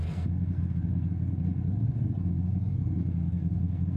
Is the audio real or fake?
fake